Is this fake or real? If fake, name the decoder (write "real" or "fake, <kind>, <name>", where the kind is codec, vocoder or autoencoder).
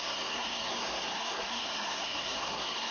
fake, codec, SNAC